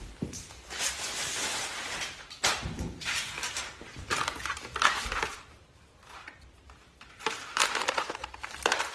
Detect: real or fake fake